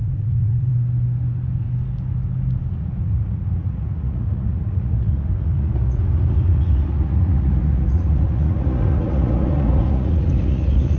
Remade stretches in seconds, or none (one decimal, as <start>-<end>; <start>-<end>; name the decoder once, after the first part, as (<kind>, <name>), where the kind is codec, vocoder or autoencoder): 0.0-0.7 (vocoder, Vocos); 3.0-11.0